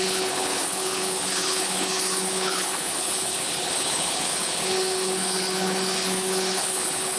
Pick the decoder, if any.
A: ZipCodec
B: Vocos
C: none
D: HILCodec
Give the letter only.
D